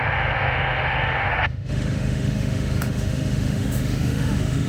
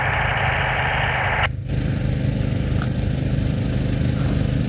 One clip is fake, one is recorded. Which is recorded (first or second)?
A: second